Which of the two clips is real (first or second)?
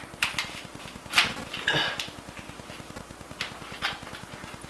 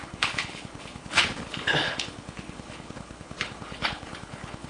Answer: first